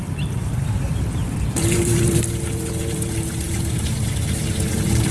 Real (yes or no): no